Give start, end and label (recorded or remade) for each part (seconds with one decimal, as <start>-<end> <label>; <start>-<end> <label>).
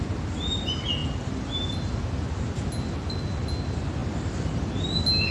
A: 0.0-5.3 recorded